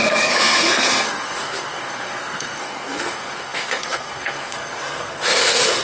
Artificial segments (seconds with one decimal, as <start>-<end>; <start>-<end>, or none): 0.0-5.8